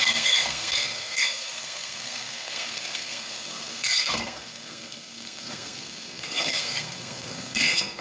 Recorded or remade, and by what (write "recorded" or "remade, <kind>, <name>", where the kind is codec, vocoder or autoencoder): remade, codec, SNAC